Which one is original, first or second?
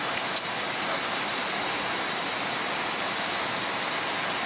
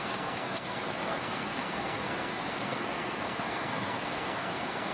first